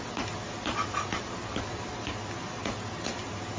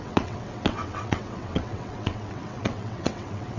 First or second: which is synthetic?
second